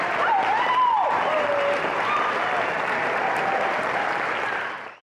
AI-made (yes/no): no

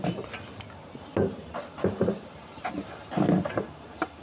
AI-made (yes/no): no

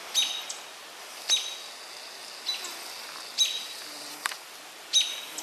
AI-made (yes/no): no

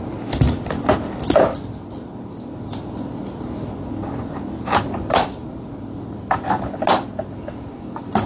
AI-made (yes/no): no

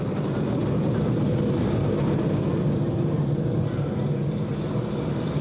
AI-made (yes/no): no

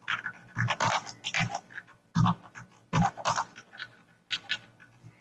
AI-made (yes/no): no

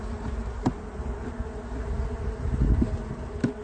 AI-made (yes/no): no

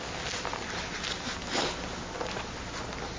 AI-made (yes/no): no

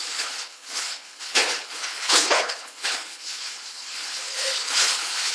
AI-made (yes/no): yes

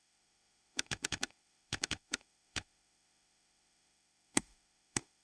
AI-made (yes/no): yes